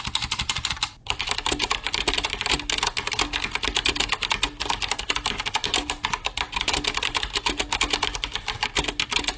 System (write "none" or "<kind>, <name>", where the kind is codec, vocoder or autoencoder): none